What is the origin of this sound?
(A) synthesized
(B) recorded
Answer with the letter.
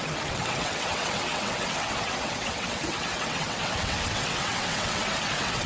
A